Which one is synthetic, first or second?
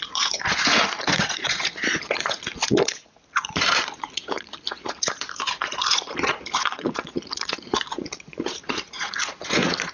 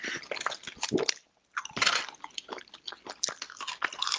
first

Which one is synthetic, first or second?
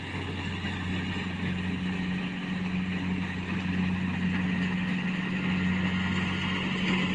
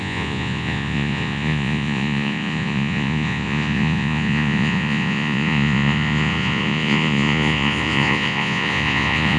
second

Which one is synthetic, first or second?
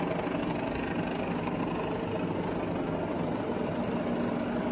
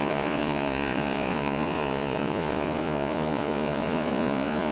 second